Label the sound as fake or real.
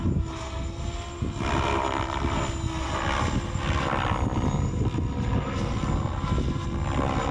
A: real